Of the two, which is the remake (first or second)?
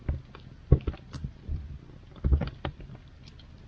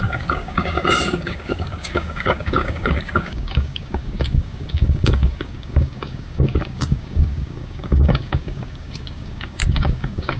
second